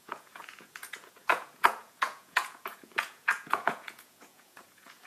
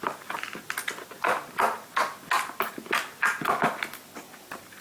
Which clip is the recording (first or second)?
second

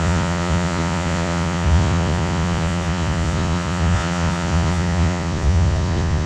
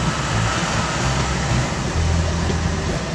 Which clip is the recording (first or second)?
second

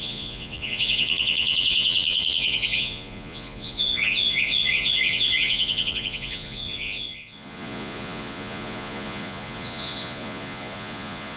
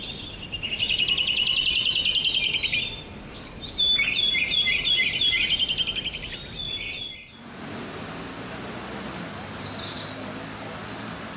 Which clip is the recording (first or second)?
second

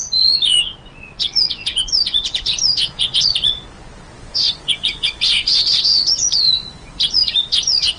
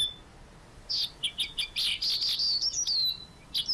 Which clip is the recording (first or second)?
second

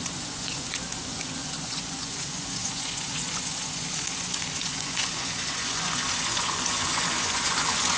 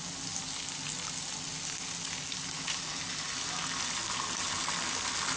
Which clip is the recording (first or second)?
second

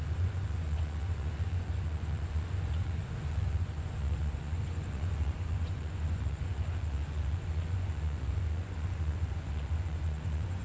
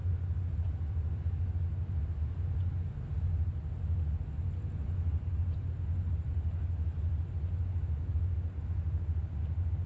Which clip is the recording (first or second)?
second